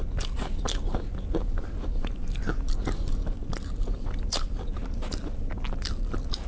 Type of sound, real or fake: real